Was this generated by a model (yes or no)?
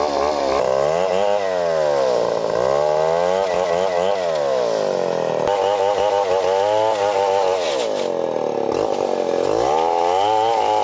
no